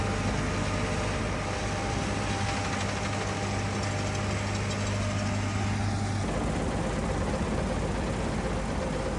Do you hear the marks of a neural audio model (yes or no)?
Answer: no